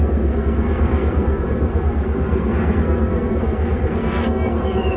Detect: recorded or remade remade